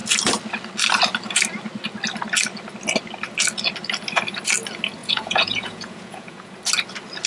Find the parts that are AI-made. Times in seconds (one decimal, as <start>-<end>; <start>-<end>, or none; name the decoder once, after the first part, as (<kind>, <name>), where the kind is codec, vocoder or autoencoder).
5.0-6.6 (vocoder, Vocos)